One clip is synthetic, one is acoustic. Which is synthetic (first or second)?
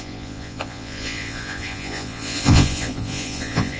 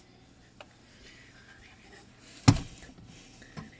first